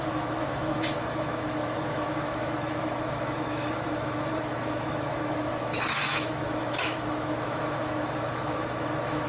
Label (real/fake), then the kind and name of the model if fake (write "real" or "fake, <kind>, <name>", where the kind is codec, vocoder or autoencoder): fake, autoencoder, DAC-VAE